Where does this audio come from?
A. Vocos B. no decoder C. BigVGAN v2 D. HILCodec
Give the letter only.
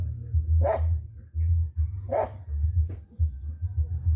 B